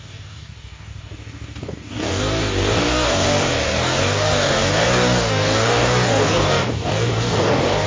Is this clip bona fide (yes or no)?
no